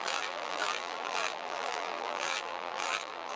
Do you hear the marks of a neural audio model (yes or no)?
yes